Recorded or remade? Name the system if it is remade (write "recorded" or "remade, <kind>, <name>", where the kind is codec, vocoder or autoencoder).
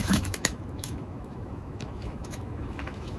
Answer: remade, autoencoder, DAC-VAE